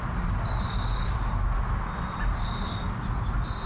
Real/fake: real